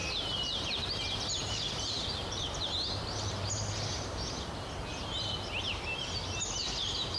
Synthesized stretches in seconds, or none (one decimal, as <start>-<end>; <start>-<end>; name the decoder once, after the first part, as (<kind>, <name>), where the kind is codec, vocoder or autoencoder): 0.0-4.3 (vocoder, BigVGAN v2); 4.9-5.8; 6.4-7.2